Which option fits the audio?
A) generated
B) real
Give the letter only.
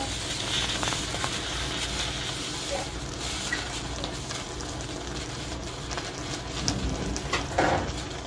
B